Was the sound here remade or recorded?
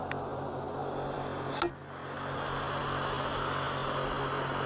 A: recorded